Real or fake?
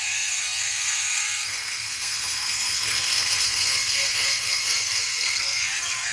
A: fake